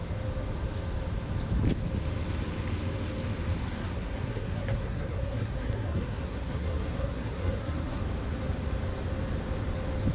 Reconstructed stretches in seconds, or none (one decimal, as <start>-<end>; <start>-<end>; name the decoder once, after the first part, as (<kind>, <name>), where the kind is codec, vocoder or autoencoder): 3.6-8.0 (codec, SNAC)